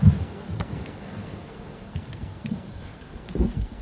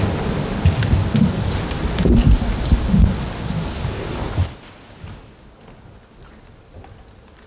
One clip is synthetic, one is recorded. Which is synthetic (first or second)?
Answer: first